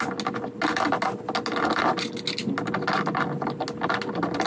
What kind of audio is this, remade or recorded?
recorded